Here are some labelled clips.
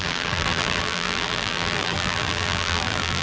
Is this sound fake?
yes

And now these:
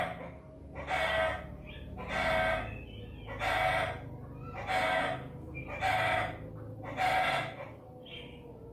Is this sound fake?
no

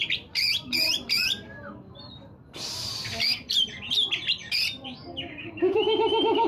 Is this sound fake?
yes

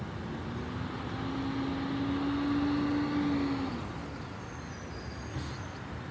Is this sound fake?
no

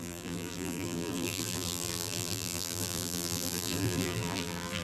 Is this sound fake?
yes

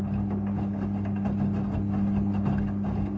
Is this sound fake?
no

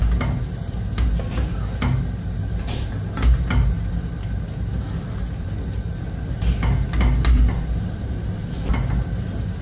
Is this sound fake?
no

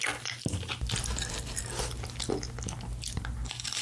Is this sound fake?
no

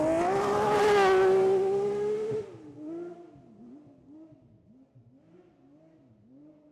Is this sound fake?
no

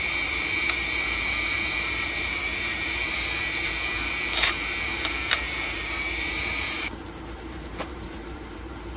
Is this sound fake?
yes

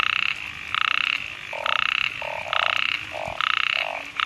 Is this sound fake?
no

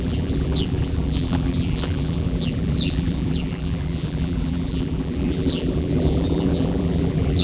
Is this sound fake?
yes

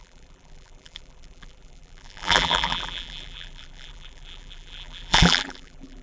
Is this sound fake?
yes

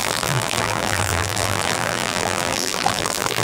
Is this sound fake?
yes